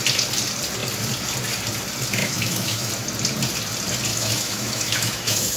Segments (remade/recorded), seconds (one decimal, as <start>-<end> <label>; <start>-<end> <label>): 0.0-2.2 recorded; 2.2-2.9 remade; 2.9-4.1 recorded; 4.1-5.6 remade